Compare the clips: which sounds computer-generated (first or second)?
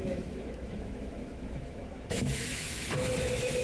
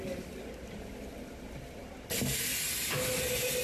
first